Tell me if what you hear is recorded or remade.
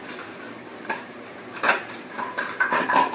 remade